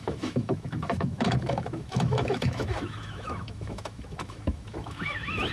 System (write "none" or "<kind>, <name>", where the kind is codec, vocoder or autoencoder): autoencoder, DAC-VAE